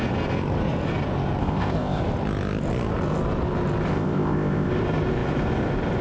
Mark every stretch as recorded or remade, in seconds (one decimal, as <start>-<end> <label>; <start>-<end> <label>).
0.0-1.4 recorded; 1.4-2.0 remade; 2.0-3.9 recorded; 3.9-4.7 remade; 4.7-6.0 recorded